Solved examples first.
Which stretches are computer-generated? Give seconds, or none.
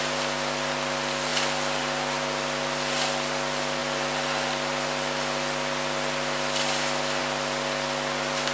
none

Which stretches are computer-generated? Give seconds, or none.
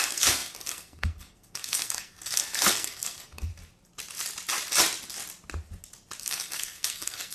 0.0-3.5 (codec, SNAC); 6.2-7.3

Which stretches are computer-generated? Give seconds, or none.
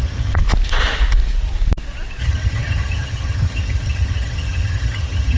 0.0-0.4 (vocoder, HiFi-GAN); 2.2-5.4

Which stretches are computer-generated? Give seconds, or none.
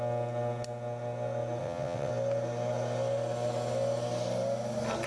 1.6-2.1 (vocoder, WaveNeXt)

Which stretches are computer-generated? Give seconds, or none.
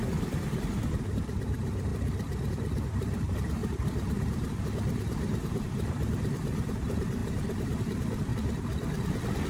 0.0-1.9 (vocoder, BigVGAN v2); 2.5-8.3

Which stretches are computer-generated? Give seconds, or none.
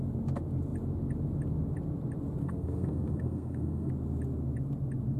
2.4-3.9 (codec, SNAC)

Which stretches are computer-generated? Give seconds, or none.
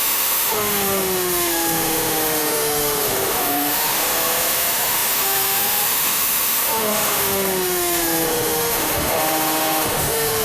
0.0-10.4 (autoencoder, DAC-VAE)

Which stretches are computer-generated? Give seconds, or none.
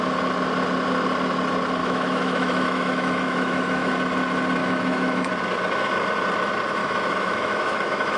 1.8-3.9 (autoencoder, DAC-VAE); 4.6-5.3; 6.8-8.2